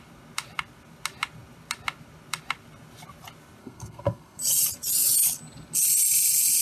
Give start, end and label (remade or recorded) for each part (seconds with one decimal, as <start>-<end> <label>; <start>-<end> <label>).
0.0-3.6 recorded; 3.6-4.4 remade; 4.4-6.6 recorded